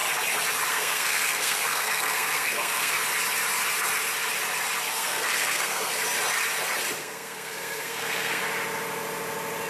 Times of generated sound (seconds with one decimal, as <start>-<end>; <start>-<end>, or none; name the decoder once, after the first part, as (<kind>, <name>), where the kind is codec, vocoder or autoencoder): 0.7-3.0 (codec, SNAC); 4.9-5.9; 7.0-8.4